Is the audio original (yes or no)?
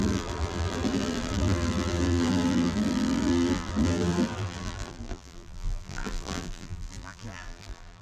no